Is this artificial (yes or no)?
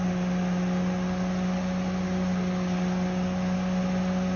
no